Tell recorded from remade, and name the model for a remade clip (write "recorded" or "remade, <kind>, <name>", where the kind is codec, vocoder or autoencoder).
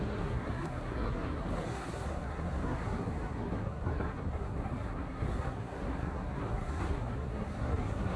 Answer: remade, codec, SNAC